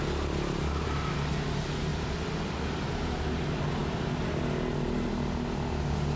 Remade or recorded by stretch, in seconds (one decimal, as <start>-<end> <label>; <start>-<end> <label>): 0.0-6.2 recorded